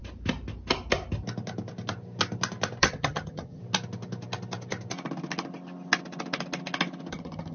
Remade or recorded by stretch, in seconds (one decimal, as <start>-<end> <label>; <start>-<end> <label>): 0.0-2.8 recorded; 2.8-3.6 remade; 3.6-7.1 recorded; 7.1-7.5 remade